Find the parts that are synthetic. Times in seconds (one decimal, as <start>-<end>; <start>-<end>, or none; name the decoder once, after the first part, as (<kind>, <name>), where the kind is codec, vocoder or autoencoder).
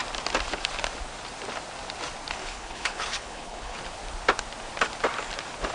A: 2.4-3.8 (codec, HILCodec)